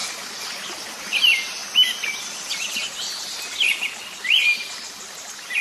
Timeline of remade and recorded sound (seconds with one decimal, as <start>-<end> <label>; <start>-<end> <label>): 0.0-5.6 recorded